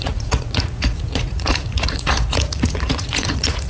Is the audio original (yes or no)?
no